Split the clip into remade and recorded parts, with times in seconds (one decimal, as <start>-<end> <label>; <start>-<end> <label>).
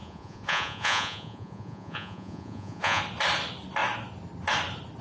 0.0-3.0 remade; 3.0-5.0 recorded